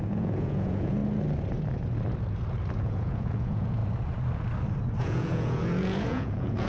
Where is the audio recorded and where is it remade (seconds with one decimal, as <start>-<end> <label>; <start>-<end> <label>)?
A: 0.0-1.0 remade; 1.0-2.8 recorded; 2.8-3.8 remade; 3.8-5.0 recorded; 5.0-6.7 remade